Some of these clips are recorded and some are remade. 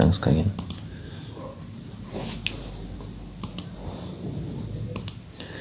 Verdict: recorded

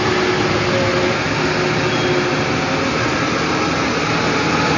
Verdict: recorded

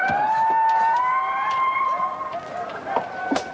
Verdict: recorded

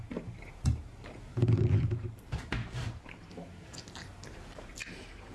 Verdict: remade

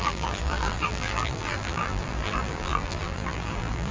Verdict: remade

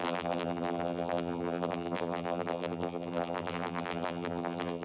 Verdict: remade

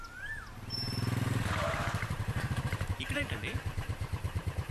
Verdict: remade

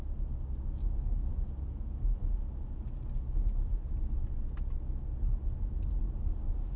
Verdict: recorded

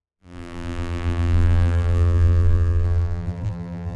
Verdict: remade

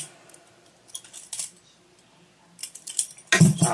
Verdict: recorded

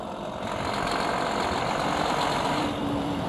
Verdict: remade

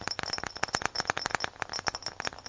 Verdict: recorded